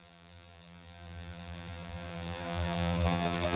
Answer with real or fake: fake